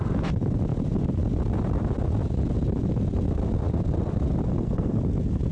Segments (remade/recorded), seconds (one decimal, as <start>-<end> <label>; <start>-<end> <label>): 0.0-4.5 recorded; 4.5-5.0 remade; 5.0-5.5 recorded